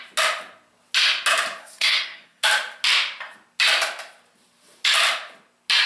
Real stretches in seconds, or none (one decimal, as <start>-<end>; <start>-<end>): 0.0-1.6; 2.4-5.9